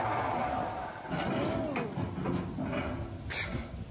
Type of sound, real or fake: real